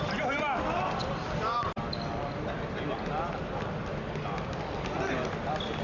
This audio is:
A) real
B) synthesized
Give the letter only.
A